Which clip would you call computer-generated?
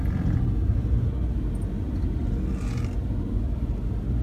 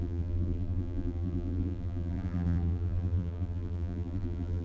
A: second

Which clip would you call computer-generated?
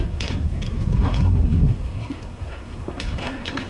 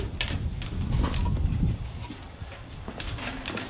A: first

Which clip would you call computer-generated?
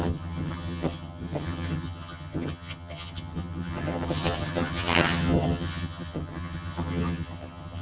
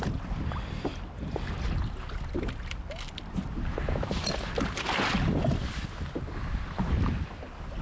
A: first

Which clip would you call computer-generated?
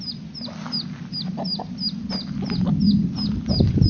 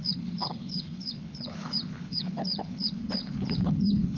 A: second